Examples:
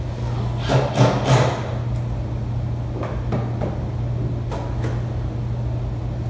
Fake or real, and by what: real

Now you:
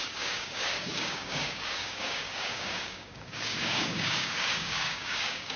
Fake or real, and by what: fake, codec, DAC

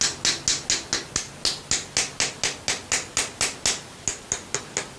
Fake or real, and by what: real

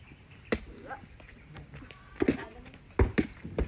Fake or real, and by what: real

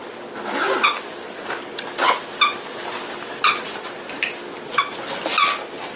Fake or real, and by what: real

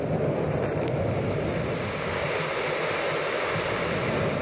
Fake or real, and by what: real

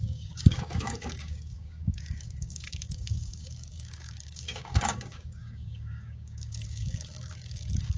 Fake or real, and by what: fake, codec, DAC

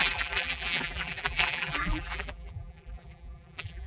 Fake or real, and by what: fake, vocoder, BigVGAN v2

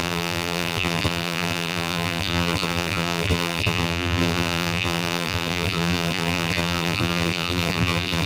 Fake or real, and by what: fake, vocoder, BigVGAN v2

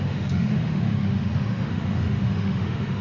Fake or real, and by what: fake, autoencoder, DAC-VAE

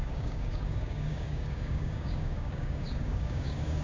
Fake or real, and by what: fake, codec, DAC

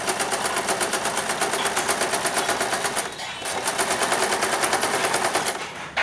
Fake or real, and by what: real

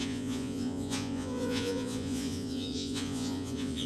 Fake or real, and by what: fake, vocoder, Vocos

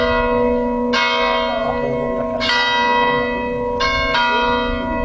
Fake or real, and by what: real